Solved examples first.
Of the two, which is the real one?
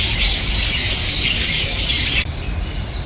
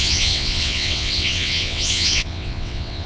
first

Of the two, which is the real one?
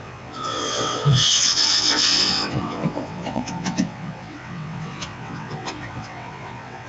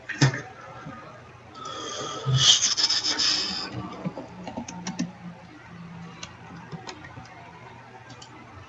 second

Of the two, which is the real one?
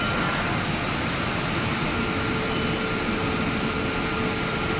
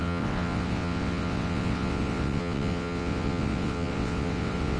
first